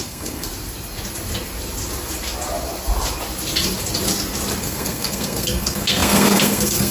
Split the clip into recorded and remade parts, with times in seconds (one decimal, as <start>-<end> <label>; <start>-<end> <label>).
0.0-0.5 remade; 0.5-4.6 recorded; 4.6-6.9 remade